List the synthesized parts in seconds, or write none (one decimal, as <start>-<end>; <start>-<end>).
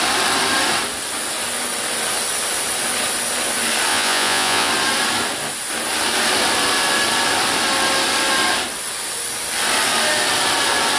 3.9-4.7